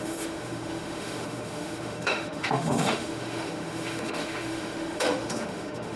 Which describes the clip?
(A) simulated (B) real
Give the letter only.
A